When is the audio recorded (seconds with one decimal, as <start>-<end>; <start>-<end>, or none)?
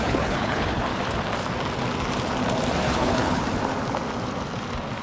0.9-2.9; 3.4-5.0